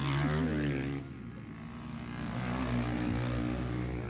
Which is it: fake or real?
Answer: real